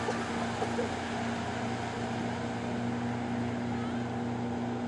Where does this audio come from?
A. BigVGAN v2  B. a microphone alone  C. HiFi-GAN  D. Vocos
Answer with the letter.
B